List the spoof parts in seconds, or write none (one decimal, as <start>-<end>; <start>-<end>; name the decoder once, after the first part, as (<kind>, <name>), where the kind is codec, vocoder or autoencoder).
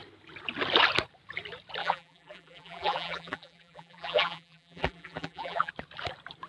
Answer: 1.8-5.7 (vocoder, BigVGAN v2)